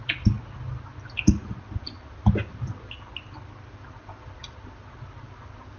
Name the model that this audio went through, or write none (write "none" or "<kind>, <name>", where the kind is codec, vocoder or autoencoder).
none